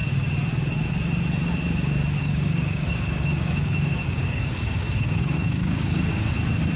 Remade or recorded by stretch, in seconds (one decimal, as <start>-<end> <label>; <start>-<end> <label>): 0.0-2.2 recorded; 2.2-6.3 remade; 6.3-6.8 recorded